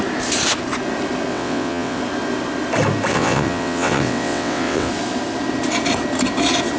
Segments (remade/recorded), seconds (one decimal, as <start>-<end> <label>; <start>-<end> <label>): 0.0-1.3 recorded; 1.3-2.0 remade; 2.0-3.1 recorded; 3.1-4.9 remade; 4.9-6.8 recorded